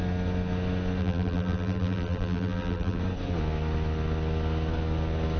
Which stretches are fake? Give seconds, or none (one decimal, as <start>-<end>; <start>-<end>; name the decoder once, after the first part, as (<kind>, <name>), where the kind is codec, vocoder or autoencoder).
1.0-3.0 (vocoder, BigVGAN v2)